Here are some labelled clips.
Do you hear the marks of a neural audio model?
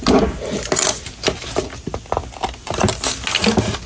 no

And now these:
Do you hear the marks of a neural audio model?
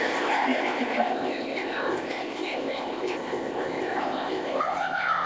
yes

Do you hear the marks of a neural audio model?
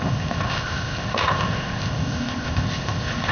yes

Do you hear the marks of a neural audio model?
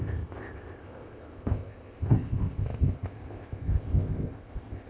yes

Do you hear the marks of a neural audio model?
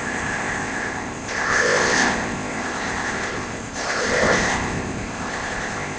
yes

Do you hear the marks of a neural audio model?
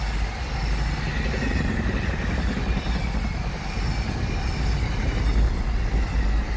no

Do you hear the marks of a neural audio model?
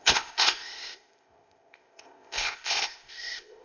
yes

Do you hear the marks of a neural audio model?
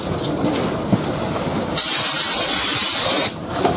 no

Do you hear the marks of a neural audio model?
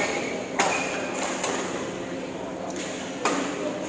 no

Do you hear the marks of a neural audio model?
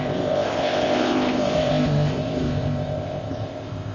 yes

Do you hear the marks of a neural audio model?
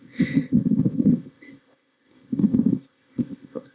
yes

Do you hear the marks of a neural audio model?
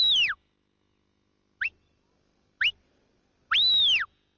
no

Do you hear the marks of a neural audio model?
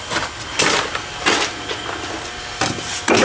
no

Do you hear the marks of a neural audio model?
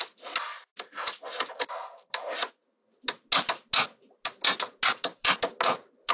no